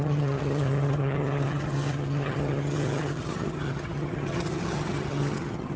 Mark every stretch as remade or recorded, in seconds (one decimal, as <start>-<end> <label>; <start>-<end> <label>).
0.0-5.8 remade